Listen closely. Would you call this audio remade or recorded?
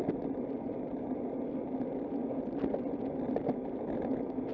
recorded